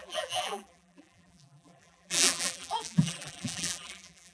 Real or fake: fake